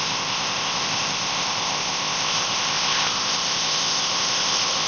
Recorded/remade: remade